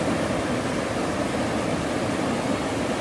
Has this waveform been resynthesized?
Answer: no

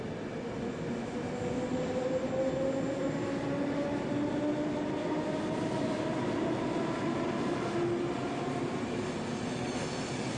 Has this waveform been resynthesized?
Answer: no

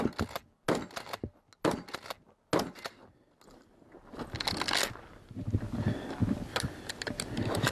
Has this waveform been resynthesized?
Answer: no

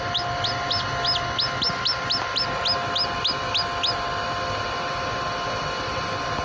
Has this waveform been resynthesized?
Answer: no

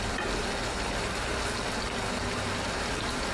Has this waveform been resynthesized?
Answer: no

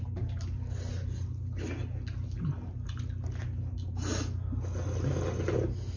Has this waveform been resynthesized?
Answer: no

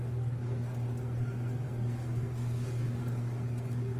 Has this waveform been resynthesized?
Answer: yes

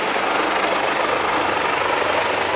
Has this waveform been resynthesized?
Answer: no